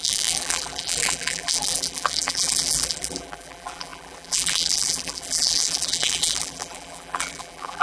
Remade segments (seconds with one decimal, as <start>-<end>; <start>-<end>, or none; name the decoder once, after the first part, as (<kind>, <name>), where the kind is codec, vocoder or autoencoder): 0.0-7.8 (vocoder, BigVGAN v2)